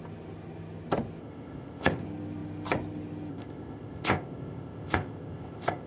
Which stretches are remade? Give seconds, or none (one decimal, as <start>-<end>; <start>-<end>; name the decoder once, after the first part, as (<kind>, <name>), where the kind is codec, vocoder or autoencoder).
1.2-2.0 (codec, ZipCodec); 3.3-5.9